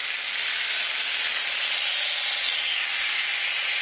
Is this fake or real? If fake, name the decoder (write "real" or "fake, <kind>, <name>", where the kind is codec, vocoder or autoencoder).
real